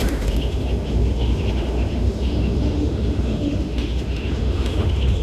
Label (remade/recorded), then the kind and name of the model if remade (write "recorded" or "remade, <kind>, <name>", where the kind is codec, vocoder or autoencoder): remade, autoencoder, DAC-VAE